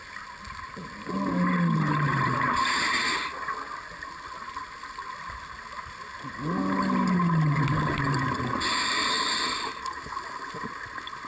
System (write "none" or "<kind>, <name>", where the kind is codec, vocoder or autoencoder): none